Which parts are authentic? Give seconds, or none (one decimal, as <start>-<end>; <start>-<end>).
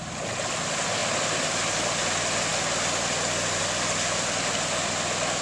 0.0-5.4